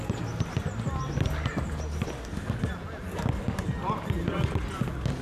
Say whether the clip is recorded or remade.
recorded